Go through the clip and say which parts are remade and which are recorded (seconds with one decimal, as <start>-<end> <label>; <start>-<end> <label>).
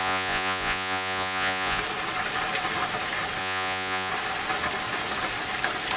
0.0-1.8 remade; 1.8-3.4 recorded; 3.4-4.1 remade; 4.1-6.0 recorded